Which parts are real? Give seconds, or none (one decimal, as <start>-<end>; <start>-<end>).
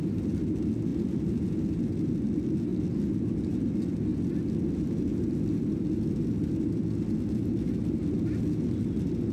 0.0-9.3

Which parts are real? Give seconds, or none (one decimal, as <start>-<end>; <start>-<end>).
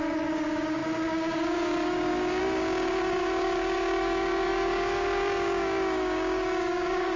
none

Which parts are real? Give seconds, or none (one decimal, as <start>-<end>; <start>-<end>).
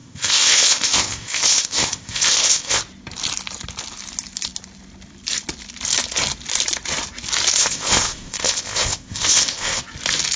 2.8-7.6; 9.8-10.4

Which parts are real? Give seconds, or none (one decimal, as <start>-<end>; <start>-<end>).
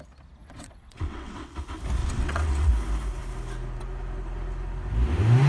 0.0-0.4; 1.6-2.0; 2.7-5.5